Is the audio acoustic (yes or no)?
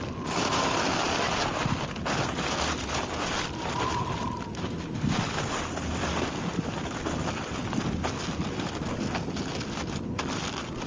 yes